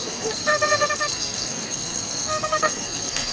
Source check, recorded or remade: remade